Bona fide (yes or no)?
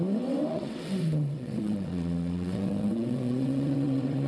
no